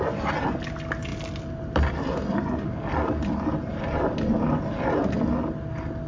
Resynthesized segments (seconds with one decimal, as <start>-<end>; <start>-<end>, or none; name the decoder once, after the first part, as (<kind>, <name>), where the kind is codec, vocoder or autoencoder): none